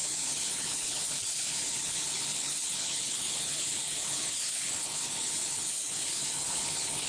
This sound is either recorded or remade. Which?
remade